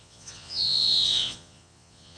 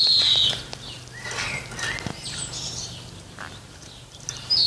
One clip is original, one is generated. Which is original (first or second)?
second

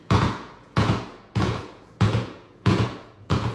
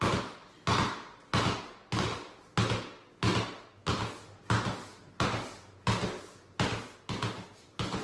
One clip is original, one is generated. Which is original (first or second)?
second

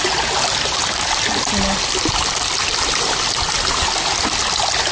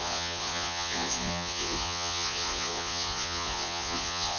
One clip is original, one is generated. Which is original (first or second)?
first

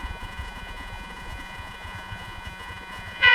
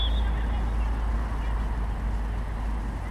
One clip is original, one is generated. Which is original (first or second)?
second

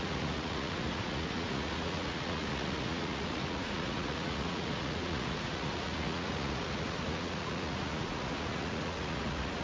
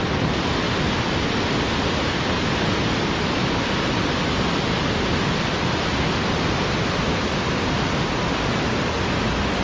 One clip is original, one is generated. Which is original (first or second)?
second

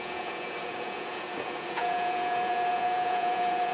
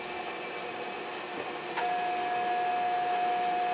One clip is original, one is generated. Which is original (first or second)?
second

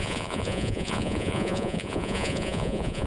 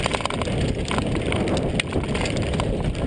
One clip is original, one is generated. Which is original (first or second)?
second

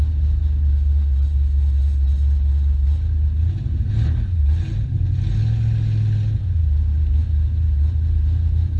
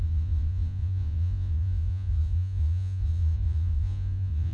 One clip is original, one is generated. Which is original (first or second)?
first